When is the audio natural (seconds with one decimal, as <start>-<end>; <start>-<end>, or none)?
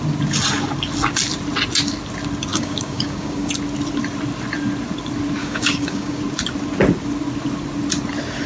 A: 0.0-2.5; 3.5-5.4; 6.2-8.5